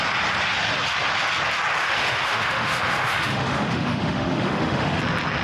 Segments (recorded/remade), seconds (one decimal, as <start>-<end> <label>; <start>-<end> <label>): 0.0-1.8 recorded; 1.8-5.0 remade; 5.0-5.4 recorded